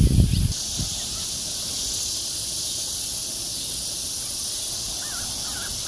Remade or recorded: recorded